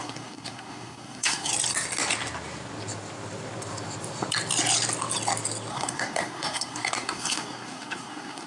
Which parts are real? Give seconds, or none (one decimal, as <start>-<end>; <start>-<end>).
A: 1.5-5.7